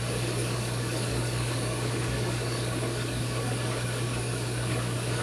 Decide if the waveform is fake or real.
fake